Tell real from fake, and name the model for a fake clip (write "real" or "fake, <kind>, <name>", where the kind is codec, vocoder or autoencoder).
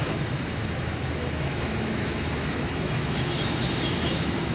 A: fake, autoencoder, DAC-VAE